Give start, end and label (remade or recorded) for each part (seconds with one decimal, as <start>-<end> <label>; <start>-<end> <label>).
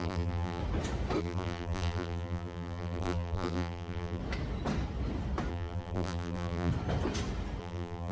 0.0-0.6 remade; 0.6-1.2 recorded; 1.2-4.2 remade; 4.2-5.5 recorded; 5.5-6.7 remade; 6.7-7.6 recorded; 7.6-8.1 remade